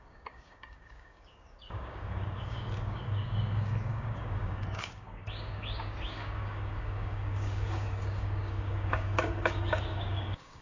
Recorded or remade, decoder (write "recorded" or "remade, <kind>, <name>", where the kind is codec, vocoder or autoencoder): remade, codec, DAC